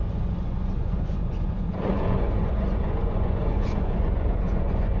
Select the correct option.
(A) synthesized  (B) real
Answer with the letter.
A